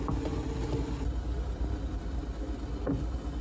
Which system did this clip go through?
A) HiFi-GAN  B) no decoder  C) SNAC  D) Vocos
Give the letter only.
B